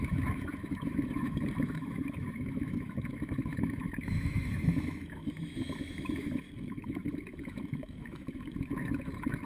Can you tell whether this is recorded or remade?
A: remade